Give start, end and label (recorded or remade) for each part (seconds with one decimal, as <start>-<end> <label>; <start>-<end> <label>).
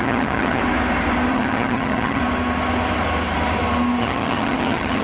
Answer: 0.0-0.6 remade; 0.6-1.3 recorded; 1.3-2.2 remade; 2.2-4.0 recorded; 4.0-5.0 remade